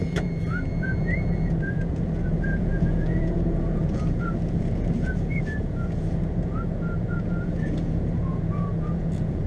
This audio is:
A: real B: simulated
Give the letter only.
B